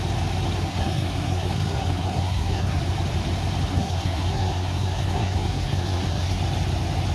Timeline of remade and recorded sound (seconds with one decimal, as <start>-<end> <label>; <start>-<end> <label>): 0.0-0.7 recorded; 0.7-2.8 remade; 2.8-3.7 recorded; 3.7-6.4 remade; 6.4-7.1 recorded